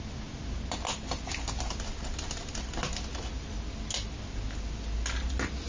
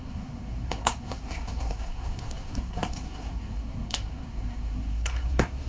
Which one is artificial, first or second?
second